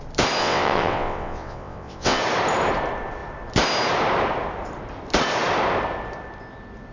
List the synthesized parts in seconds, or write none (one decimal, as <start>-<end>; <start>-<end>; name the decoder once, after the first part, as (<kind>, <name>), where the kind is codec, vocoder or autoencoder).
0.4-2.2 (vocoder, WaveNeXt)